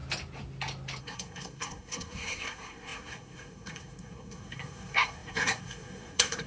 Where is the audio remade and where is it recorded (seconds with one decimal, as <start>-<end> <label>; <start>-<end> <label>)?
0.0-1.0 recorded; 1.0-6.5 remade

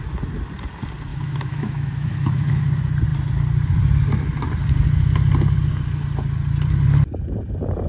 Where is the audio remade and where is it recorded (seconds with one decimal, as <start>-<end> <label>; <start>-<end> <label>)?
0.0-1.1 recorded; 1.1-2.6 remade; 2.6-7.9 recorded

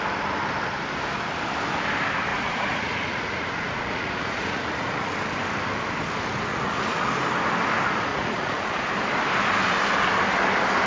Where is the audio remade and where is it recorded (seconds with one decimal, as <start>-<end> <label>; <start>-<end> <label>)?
0.0-2.3 recorded; 2.3-5.1 remade; 5.1-6.5 recorded; 6.5-7.1 remade; 7.1-8.1 recorded; 8.1-8.8 remade; 8.8-10.9 recorded

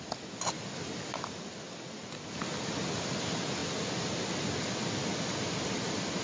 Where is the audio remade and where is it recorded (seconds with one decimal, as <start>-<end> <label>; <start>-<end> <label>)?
0.0-6.2 recorded

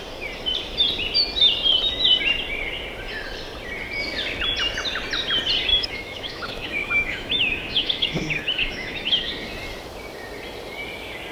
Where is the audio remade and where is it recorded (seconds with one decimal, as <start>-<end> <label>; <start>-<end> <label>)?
0.0-5.7 recorded; 5.7-9.3 remade; 9.3-11.3 recorded

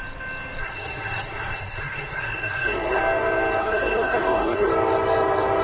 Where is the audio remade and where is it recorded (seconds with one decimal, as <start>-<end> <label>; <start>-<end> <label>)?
0.0-0.6 recorded; 0.6-3.0 remade; 3.0-3.6 recorded; 3.6-4.7 remade; 4.7-5.6 recorded

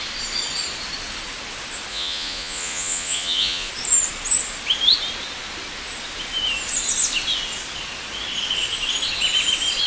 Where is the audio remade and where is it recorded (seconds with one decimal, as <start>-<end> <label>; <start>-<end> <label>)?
0.0-1.9 recorded; 1.9-3.7 remade; 3.7-9.9 recorded